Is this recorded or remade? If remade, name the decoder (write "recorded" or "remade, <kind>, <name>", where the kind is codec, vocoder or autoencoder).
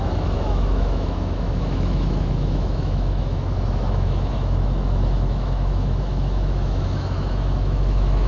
remade, autoencoder, DAC-VAE